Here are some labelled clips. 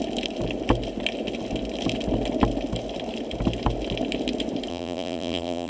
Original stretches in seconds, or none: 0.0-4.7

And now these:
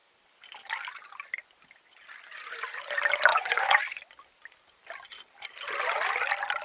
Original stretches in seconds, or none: 0.0-3.3; 4.0-6.6

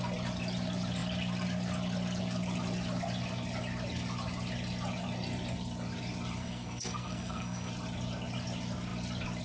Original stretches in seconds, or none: 0.0-6.4; 7.7-9.4

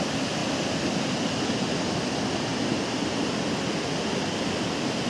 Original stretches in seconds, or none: 0.0-5.1